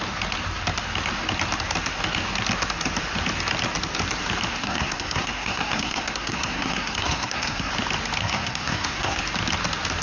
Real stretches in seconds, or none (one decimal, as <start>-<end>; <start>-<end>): 0.0-4.5; 7.7-8.2; 9.2-10.0